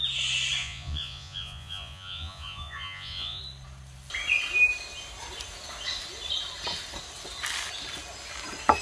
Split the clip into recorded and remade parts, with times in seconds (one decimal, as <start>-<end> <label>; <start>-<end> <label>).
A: 0.0-0.6 recorded; 0.6-3.4 remade; 3.4-8.8 recorded